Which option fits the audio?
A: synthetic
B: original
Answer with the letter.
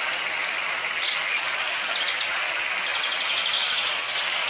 B